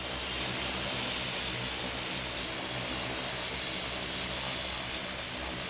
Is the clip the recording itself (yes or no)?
yes